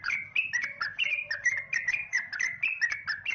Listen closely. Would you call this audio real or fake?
real